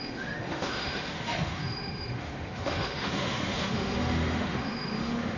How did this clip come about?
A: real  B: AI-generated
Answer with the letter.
B